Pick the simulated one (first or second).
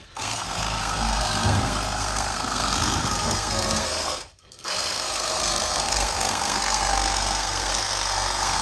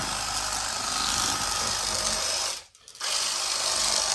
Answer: first